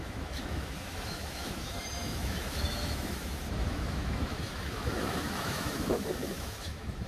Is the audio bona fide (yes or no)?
no